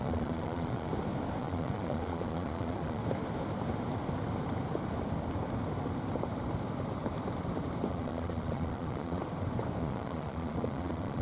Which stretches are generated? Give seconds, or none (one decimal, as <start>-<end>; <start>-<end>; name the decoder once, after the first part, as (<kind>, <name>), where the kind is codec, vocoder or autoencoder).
0.0-0.9 (vocoder, Vocos); 1.4-3.0; 7.9-9.2; 9.8-11.2